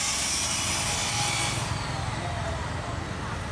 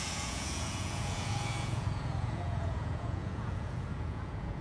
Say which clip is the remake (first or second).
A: second